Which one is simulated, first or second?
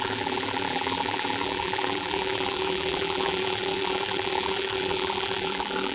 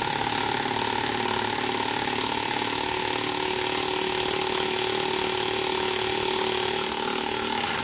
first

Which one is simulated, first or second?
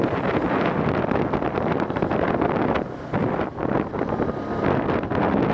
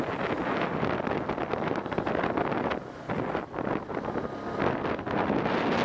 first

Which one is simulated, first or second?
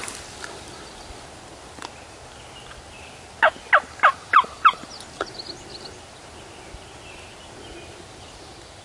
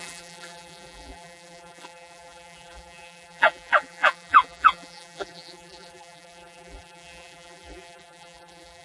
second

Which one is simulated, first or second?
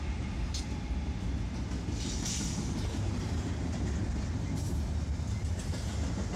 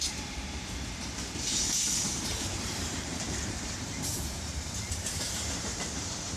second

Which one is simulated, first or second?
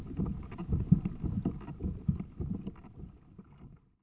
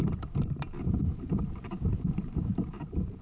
second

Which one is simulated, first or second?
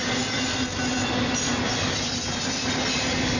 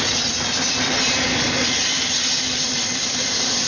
second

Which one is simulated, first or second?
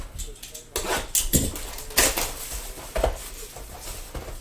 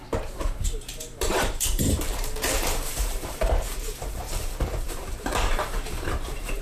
second